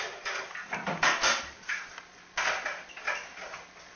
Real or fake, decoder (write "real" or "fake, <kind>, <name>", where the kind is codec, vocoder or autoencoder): real